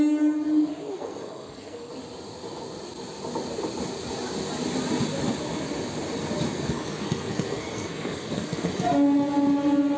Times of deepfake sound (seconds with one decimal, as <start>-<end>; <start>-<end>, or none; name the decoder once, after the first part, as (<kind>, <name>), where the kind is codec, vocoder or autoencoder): 0.7-1.9 (codec, SNAC); 6.5-8.7